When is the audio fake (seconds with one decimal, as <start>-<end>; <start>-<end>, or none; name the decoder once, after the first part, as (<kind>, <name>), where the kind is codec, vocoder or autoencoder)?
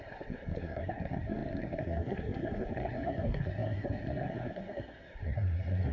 0.0-5.9 (codec, SNAC)